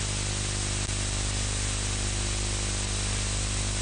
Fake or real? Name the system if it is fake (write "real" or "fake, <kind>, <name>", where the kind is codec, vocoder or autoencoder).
real